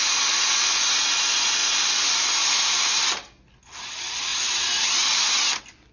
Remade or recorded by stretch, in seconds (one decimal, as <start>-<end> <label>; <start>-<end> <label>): 0.0-5.9 recorded